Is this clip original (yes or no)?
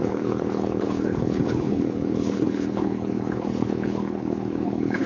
no